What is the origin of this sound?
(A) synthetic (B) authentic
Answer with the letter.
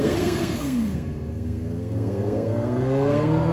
A